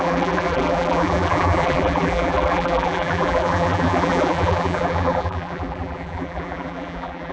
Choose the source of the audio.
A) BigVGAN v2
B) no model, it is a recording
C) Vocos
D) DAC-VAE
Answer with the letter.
A